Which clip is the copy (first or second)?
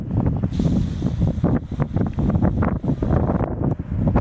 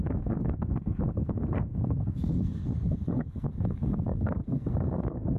second